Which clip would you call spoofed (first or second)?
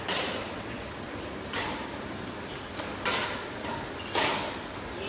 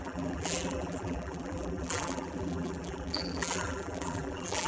second